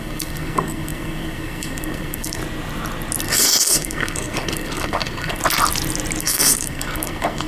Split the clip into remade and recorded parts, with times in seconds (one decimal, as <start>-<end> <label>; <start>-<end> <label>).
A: 0.0-2.4 remade; 2.4-3.2 recorded; 3.2-5.4 remade; 5.4-6.2 recorded; 6.2-7.5 remade